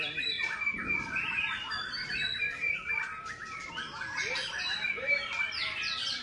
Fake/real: fake